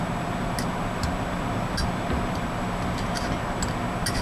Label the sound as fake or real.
real